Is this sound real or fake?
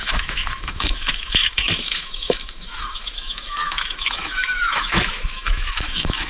fake